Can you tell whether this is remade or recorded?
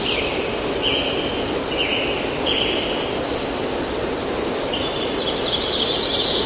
recorded